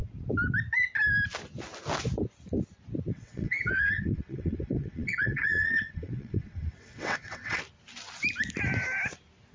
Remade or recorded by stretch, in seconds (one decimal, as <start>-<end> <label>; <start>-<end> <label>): 0.0-3.1 recorded; 3.1-7.6 remade; 7.6-9.5 recorded